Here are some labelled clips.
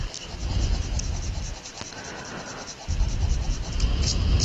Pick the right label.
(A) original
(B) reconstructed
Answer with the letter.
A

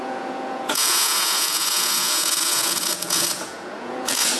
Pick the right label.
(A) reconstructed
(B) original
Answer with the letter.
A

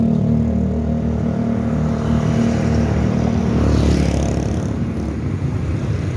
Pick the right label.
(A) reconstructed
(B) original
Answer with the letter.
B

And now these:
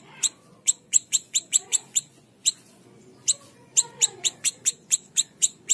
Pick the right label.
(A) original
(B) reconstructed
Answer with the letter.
B